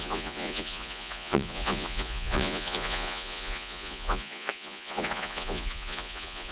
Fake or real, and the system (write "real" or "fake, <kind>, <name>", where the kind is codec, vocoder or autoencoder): fake, vocoder, Vocos